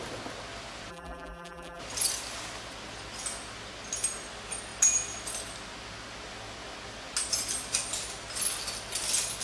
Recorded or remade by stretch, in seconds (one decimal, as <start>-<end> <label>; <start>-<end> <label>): 0.0-0.9 recorded; 0.9-1.8 remade; 1.8-9.4 recorded